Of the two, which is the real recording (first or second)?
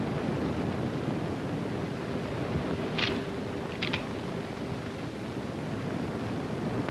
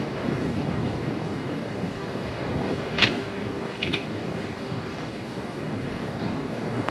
first